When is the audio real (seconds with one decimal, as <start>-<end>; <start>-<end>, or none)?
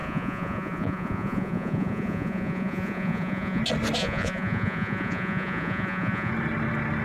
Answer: 3.6-4.0; 6.3-7.0